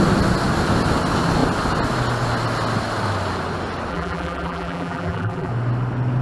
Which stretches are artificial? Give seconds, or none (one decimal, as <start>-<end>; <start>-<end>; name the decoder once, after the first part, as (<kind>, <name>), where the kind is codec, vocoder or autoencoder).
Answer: 3.9-5.5 (vocoder, BigVGAN v2)